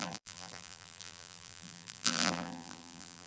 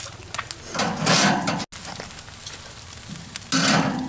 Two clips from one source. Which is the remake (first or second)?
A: first